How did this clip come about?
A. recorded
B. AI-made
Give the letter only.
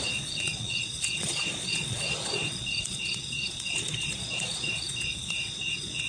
B